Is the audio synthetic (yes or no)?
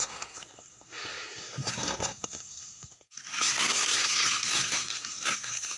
yes